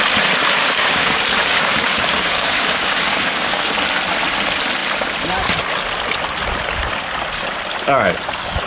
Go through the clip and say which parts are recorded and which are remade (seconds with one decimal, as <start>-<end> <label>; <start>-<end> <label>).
0.0-0.6 recorded; 0.6-3.7 remade; 3.7-8.7 recorded

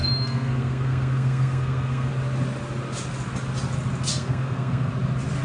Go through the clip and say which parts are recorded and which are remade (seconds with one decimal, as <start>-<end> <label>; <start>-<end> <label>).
0.0-2.1 remade; 2.1-4.1 recorded; 4.1-4.9 remade; 4.9-5.4 recorded

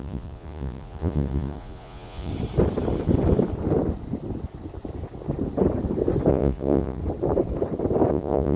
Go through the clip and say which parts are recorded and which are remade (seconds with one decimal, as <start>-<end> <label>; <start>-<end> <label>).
0.0-2.3 remade; 2.3-6.3 recorded; 6.3-7.0 remade; 7.0-8.1 recorded; 8.1-8.6 remade

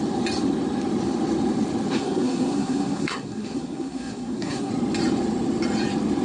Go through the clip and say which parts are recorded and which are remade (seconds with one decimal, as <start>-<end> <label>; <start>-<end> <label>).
0.0-1.9 recorded; 1.9-4.7 remade; 4.7-6.2 recorded

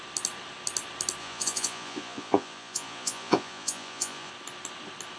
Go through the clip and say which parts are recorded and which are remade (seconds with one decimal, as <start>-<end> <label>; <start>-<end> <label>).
0.0-1.2 recorded; 1.2-4.3 remade; 4.3-5.2 recorded

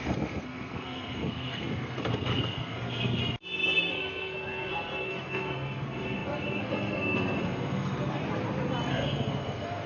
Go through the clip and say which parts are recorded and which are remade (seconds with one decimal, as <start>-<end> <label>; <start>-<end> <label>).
0.0-3.2 remade; 3.2-3.8 recorded; 3.8-8.2 remade; 8.2-8.9 recorded; 8.9-9.9 remade